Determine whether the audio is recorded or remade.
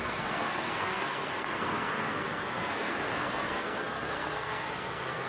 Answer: remade